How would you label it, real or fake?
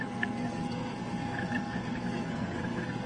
fake